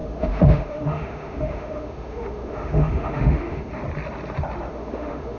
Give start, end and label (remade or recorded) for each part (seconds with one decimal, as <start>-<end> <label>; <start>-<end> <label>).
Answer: 0.0-3.7 remade; 3.7-4.7 recorded; 4.7-5.4 remade